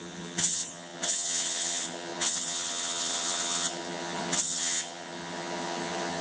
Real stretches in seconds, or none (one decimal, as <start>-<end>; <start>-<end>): none